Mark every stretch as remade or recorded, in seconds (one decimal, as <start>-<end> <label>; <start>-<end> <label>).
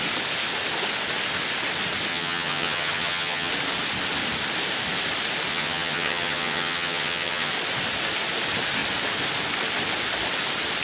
0.0-2.1 recorded; 2.1-3.5 remade; 3.5-5.5 recorded; 5.5-7.5 remade; 7.5-10.8 recorded